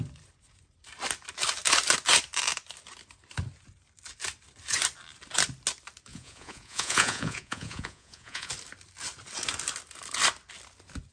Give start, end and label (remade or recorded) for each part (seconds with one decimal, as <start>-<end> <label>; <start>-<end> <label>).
0.0-6.1 recorded; 6.1-8.5 remade; 8.5-11.1 recorded